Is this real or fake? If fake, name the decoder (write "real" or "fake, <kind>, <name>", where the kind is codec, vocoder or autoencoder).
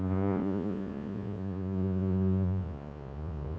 fake, vocoder, Vocos